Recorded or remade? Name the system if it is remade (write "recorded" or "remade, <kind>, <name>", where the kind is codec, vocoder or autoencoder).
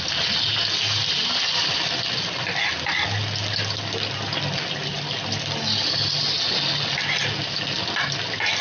recorded